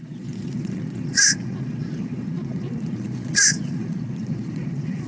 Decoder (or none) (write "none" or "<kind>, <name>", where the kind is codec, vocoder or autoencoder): vocoder, Vocos